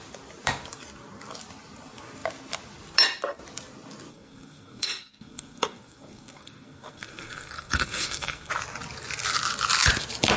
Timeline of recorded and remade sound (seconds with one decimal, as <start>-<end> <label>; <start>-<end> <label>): 0.0-4.1 recorded; 4.1-8.5 remade; 8.5-10.4 recorded